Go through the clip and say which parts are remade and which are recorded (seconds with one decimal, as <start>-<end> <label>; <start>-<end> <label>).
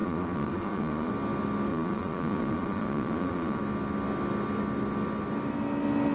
0.0-1.1 remade; 1.1-1.7 recorded; 1.7-3.6 remade; 3.6-6.1 recorded